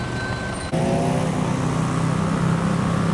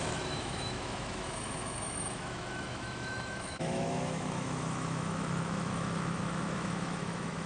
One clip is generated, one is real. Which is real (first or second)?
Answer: first